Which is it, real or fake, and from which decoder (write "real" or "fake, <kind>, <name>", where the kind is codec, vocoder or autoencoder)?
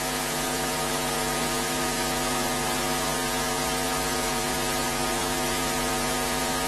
fake, vocoder, Vocos